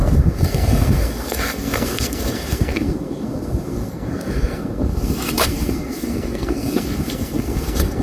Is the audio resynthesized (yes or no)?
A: yes